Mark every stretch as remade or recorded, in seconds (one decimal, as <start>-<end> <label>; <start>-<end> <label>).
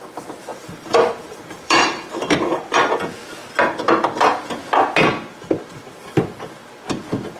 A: 0.0-0.5 recorded; 0.5-2.9 remade; 2.9-5.3 recorded; 5.3-6.1 remade; 6.1-7.4 recorded